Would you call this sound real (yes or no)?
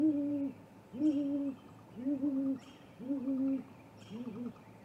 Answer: no